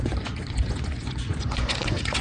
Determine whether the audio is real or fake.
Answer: fake